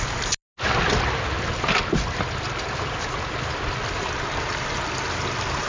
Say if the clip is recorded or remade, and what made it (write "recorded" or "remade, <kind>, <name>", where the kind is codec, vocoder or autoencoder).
recorded